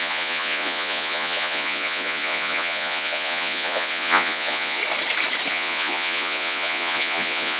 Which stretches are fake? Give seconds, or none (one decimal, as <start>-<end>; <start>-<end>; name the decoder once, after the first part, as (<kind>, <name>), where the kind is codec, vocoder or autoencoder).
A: 0.0-4.8 (vocoder, Vocos); 5.5-7.6